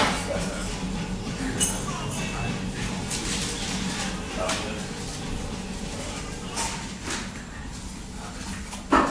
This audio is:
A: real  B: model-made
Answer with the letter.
A